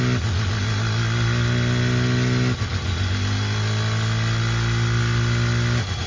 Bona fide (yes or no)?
yes